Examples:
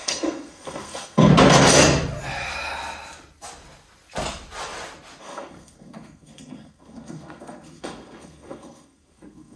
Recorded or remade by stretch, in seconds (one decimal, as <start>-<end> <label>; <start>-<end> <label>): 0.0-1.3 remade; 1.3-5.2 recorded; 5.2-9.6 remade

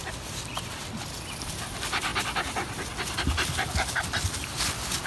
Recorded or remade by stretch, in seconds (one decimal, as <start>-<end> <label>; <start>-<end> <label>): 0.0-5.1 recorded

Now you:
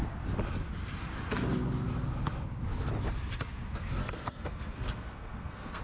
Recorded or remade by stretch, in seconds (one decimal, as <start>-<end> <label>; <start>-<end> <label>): 0.0-4.0 recorded; 4.0-5.8 remade

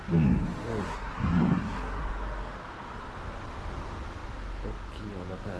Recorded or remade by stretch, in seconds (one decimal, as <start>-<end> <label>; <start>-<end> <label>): 0.0-0.8 recorded; 0.8-2.0 remade; 2.0-5.6 recorded

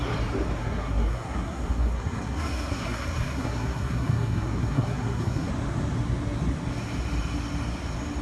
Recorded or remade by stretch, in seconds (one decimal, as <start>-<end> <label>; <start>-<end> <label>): 0.0-0.6 recorded; 0.6-5.5 remade; 5.5-8.2 recorded

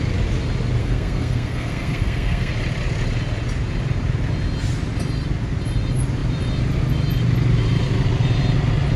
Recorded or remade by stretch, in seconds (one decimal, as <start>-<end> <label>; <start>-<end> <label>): 0.0-0.8 recorded; 0.8-2.5 remade; 2.5-9.0 recorded

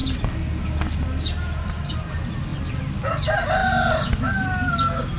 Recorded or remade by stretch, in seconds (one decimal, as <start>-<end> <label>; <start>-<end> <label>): 0.0-5.2 recorded